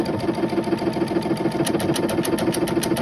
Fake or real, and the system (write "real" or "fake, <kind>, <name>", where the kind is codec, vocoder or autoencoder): real